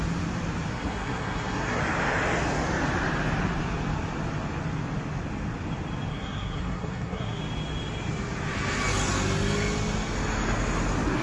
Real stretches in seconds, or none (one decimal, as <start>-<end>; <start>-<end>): 0.0-0.7; 1.8-6.1; 7.4-11.2

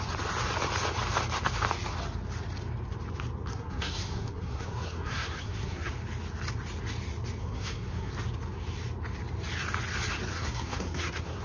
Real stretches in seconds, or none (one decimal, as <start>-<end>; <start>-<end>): 0.0-3.5; 5.9-7.4; 8.1-10.3

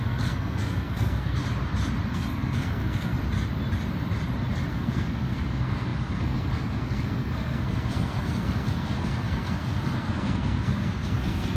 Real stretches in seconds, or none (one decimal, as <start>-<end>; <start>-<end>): 1.4-2.1; 3.2-4.7

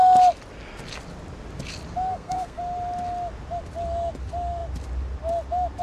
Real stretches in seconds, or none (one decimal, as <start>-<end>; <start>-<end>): 0.0-2.1; 2.6-5.8

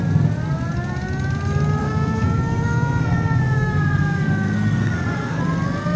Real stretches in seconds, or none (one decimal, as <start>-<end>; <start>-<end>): 0.0-1.8; 5.4-6.0